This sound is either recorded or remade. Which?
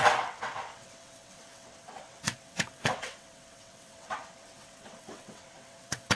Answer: remade